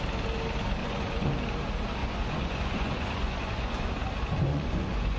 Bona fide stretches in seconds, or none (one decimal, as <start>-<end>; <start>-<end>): 0.0-0.8; 1.3-2.0; 3.9-4.5